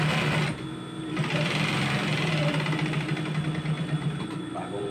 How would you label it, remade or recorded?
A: recorded